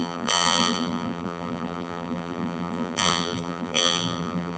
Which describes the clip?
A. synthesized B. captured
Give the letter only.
A